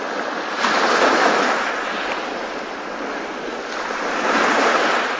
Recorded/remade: recorded